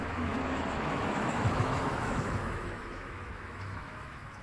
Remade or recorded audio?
remade